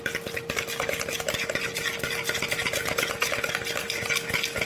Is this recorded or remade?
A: recorded